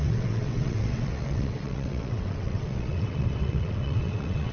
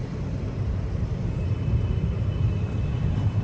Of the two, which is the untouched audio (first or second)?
second